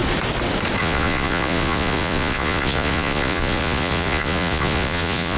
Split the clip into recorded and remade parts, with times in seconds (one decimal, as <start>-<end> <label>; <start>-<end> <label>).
0.0-0.8 recorded; 0.8-5.4 remade